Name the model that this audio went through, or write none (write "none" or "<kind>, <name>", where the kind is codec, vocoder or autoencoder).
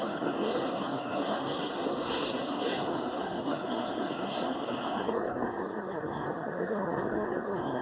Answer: codec, SNAC